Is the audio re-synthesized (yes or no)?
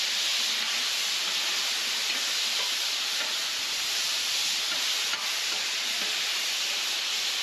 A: no